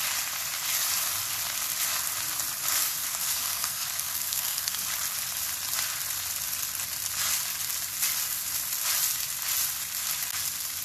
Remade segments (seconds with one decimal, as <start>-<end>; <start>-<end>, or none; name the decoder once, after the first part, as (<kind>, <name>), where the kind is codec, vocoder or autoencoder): 2.7-4.8 (codec, SNAC)